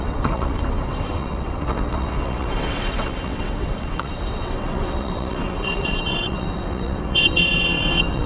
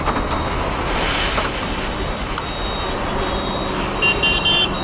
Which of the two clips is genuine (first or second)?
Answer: second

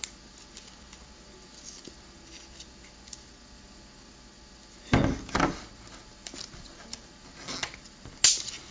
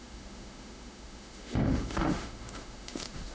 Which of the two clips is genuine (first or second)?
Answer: first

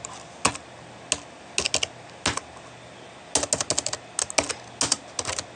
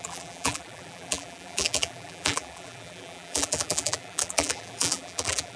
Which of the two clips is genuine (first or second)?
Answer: first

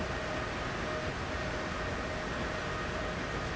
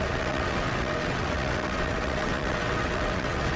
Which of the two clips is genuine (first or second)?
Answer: first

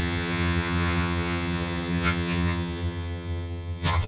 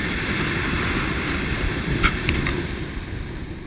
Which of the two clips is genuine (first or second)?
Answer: second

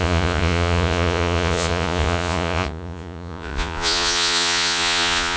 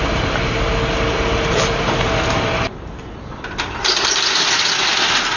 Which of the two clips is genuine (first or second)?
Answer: second